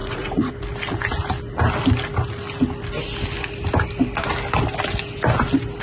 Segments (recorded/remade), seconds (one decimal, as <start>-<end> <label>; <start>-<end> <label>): 0.0-0.5 remade; 0.5-5.8 recorded